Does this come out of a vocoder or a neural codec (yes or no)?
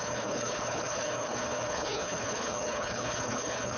yes